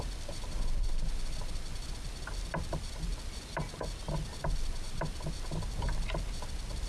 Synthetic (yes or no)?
no